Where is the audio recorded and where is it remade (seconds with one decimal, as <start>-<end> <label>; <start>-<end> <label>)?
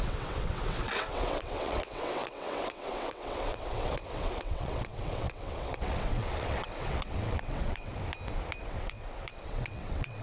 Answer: 0.0-7.9 remade; 7.9-8.6 recorded; 8.6-10.2 remade